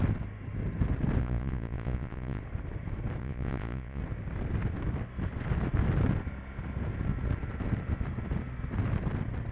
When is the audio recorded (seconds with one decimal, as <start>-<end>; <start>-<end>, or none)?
0.0-1.2; 2.4-3.2; 4.0-9.5

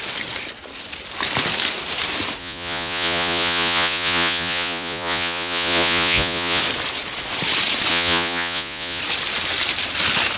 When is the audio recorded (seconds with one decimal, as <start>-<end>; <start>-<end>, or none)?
0.0-2.4; 6.6-7.9; 9.0-10.4

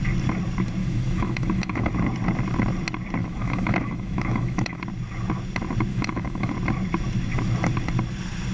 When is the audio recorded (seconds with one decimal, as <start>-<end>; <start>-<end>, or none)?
0.0-0.8; 1.9-3.2; 4.8-5.9; 6.5-8.5